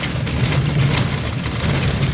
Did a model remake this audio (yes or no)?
no